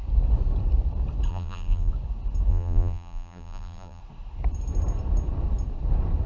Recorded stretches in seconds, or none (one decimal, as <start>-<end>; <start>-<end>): 0.0-1.3; 1.9-2.5; 4.0-6.3